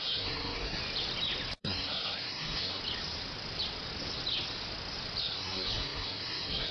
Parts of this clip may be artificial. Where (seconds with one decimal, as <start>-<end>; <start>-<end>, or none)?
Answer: 0.0-0.8; 1.6-2.8; 5.2-6.7